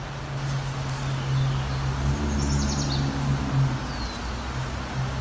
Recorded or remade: recorded